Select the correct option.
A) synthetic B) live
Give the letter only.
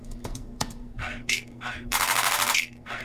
A